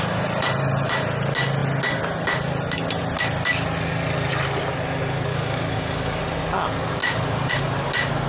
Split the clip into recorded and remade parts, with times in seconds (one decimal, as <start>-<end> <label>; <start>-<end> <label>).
0.0-5.3 recorded; 5.3-6.2 remade; 6.2-8.3 recorded